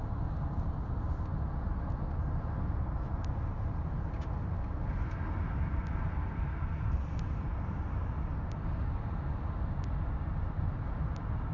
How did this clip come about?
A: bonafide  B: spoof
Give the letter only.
A